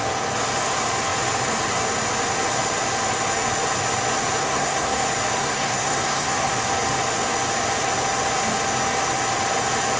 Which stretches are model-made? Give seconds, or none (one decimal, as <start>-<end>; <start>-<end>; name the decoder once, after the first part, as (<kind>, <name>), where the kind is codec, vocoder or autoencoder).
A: 4.4-5.0 (codec, SNAC); 5.4-6.5